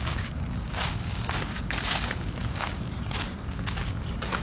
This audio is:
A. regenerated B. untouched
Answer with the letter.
A